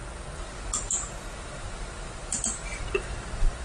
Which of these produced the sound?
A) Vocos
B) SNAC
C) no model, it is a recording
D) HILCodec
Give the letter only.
C